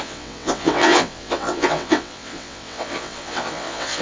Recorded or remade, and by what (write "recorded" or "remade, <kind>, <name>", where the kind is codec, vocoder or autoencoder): remade, vocoder, WaveNeXt